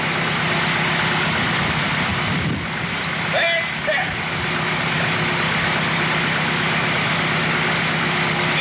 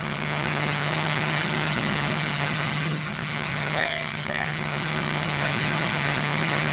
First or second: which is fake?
second